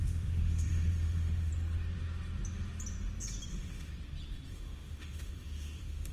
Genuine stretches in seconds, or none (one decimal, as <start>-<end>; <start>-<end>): 1.5-3.5; 3.9-4.5